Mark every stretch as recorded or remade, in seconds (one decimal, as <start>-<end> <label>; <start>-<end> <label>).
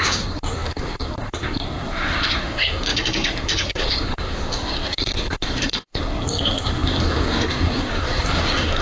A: 0.0-8.8 remade